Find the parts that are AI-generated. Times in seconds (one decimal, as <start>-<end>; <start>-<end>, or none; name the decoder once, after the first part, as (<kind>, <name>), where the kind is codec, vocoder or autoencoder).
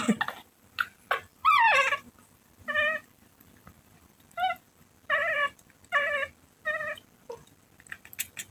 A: 1.3-4.5 (vocoder, BigVGAN v2); 5.2-6.1